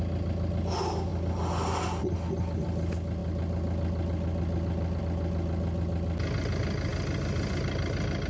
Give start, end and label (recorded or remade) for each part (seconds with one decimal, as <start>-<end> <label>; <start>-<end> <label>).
0.0-8.3 recorded